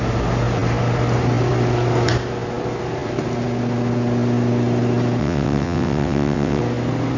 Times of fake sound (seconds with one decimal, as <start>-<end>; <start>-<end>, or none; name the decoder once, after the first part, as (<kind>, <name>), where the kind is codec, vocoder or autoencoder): 5.2-6.6 (vocoder, WaveNeXt)